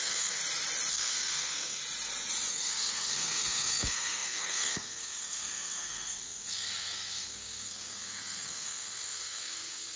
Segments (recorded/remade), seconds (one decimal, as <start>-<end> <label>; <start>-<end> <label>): 0.0-0.4 remade; 0.4-0.9 recorded; 0.9-1.8 remade; 1.8-2.5 recorded; 2.5-10.0 remade